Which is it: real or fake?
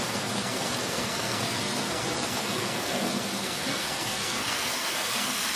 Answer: fake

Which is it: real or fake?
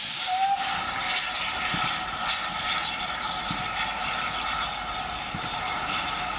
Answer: real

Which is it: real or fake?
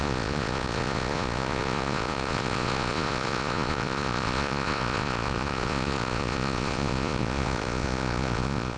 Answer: fake